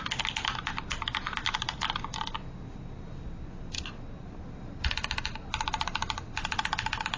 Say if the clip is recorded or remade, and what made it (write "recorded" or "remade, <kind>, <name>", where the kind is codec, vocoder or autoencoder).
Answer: recorded